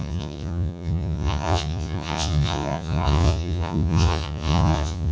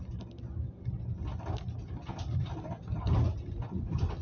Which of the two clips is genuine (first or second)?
second